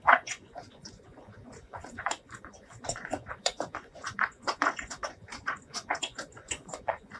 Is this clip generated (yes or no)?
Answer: yes